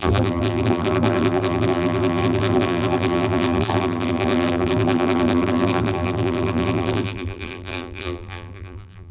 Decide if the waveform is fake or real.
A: fake